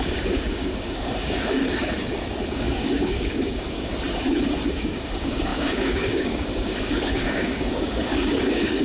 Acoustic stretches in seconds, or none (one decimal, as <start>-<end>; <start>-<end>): 1.6-2.5; 3.9-4.7